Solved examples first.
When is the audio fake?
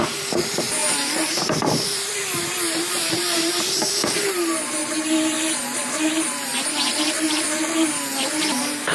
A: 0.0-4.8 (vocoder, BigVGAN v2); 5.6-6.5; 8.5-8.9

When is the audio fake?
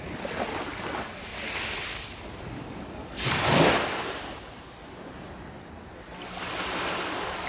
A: 1.3-4.2 (vocoder, BigVGAN v2)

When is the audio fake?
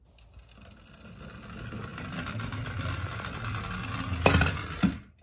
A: 1.9-5.2 (vocoder, BigVGAN v2)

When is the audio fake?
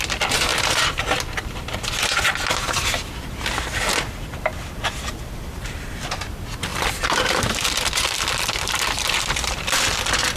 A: 0.0-10.4 (vocoder, BigVGAN v2)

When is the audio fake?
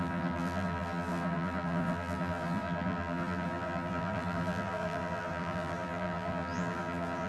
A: 0.0-7.3 (vocoder, BigVGAN v2)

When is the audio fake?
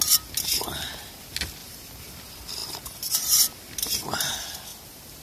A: 1.6-2.2 (vocoder, BigVGAN v2); 4.7-5.2